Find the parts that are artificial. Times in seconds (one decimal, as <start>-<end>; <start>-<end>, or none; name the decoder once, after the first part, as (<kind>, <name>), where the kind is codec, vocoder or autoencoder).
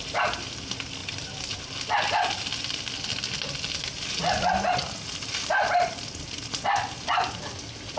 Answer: none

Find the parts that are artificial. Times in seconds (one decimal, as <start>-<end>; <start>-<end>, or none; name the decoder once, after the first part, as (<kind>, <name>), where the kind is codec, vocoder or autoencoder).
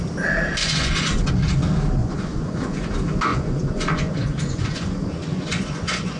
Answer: 0.6-1.3 (vocoder, Vocos); 2.0-2.9; 3.3-6.2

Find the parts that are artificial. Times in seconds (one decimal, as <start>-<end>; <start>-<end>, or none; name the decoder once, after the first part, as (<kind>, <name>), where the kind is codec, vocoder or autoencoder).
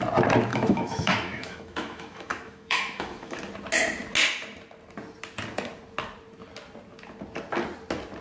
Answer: 0.5-3.4 (autoencoder, DAC-VAE)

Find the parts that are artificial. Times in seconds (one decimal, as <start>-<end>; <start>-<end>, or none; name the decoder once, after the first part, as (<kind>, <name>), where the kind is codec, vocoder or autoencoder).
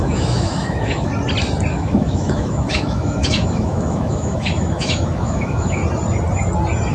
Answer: 0.0-1.1 (autoencoder, DAC-VAE); 1.7-5.8